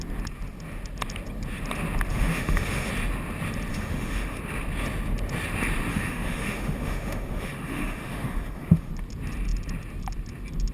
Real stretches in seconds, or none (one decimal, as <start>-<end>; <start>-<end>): 0.0-2.1; 2.9-3.7; 4.4-5.9; 8.9-10.7

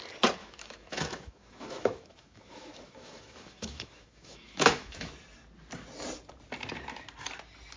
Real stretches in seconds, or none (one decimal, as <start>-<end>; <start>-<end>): 0.0-0.4; 5.1-7.8

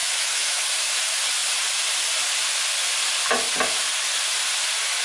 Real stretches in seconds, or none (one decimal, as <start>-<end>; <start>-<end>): 0.6-5.0

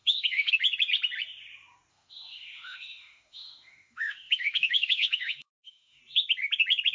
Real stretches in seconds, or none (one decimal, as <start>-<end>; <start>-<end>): 0.5-1.9; 6.0-6.9